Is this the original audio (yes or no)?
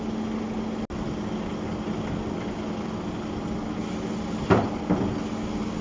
yes